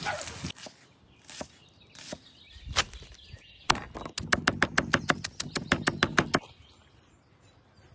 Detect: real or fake real